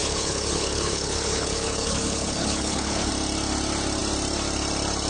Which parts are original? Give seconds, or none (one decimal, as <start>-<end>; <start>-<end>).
3.1-5.1